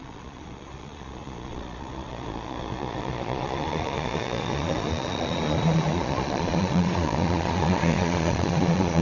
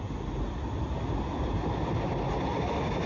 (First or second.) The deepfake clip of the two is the first